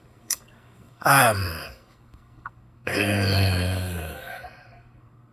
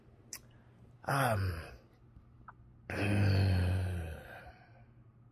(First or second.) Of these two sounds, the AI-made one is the first